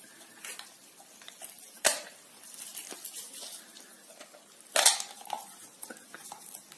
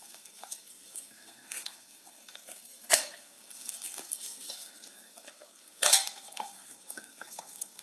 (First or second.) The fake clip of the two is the second